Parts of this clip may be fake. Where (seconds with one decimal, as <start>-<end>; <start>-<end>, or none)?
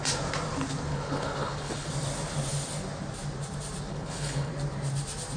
0.9-1.9; 3.9-4.5